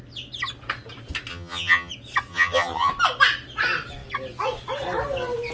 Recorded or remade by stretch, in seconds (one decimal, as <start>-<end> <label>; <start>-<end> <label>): 0.0-1.3 recorded; 1.3-1.9 remade; 1.9-2.3 recorded; 2.3-2.9 remade; 2.9-5.5 recorded